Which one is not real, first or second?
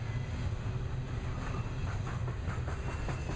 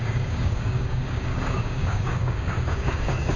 second